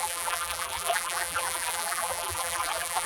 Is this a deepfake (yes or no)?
yes